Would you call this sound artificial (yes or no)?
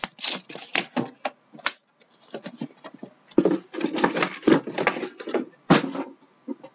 no